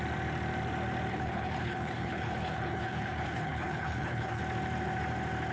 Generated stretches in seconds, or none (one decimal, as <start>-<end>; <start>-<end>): 1.1-4.4